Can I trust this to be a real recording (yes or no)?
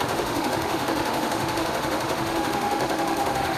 no